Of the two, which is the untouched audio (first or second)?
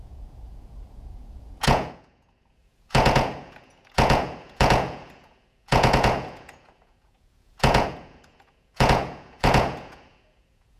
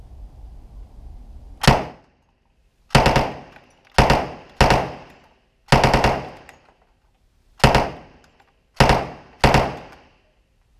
second